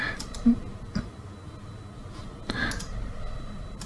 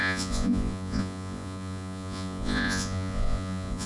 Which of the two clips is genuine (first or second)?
first